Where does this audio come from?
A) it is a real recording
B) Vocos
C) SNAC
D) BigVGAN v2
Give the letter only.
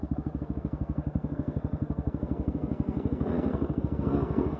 C